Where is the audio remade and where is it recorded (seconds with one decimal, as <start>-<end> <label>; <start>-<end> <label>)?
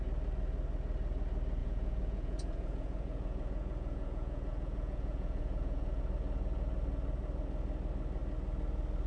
0.0-1.6 recorded; 1.6-6.0 remade; 6.0-9.1 recorded